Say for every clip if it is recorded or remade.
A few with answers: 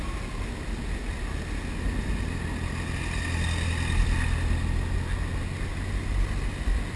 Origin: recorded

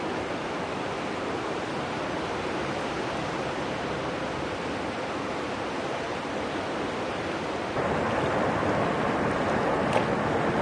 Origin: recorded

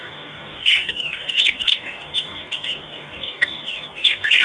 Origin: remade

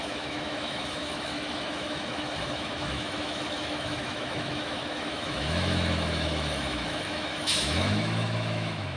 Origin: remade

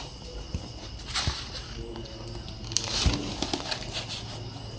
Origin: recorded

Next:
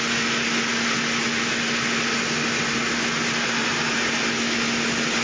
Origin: recorded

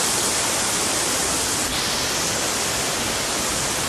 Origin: recorded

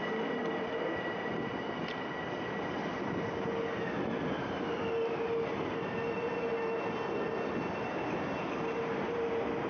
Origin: recorded